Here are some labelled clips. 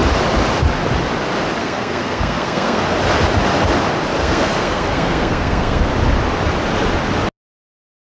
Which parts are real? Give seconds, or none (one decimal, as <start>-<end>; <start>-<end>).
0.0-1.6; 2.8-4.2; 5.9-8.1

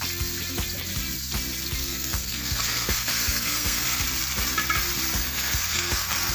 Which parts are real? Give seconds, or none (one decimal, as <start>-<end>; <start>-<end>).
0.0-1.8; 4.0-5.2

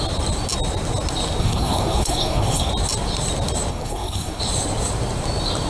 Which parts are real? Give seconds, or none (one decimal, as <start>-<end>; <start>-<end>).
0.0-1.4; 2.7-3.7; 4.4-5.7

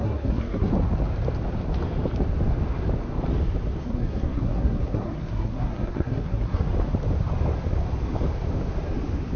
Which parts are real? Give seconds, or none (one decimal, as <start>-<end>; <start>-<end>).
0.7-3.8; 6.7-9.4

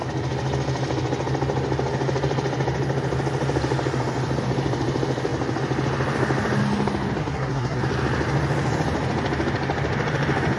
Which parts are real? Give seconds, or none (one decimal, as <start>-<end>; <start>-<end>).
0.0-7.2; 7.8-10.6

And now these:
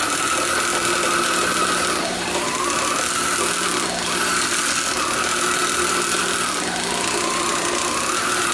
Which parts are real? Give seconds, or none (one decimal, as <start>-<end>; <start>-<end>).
0.0-8.5

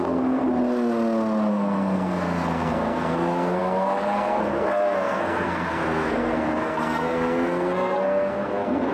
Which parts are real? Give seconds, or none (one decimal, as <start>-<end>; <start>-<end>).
0.4-1.5

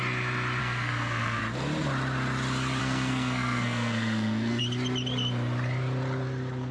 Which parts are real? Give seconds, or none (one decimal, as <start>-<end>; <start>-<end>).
0.0-0.6; 1.4-2.8; 4.6-6.7